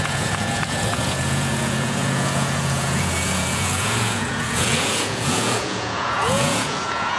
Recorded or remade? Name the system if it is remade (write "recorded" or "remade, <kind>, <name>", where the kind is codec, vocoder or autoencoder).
remade, vocoder, Vocos